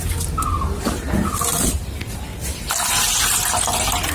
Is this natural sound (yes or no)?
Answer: yes